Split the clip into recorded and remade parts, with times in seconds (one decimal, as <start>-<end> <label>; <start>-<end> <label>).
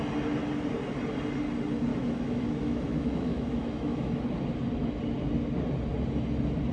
0.0-1.9 recorded; 1.9-4.1 remade; 4.1-6.7 recorded